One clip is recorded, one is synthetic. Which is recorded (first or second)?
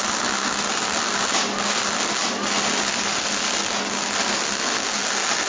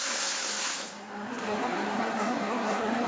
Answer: first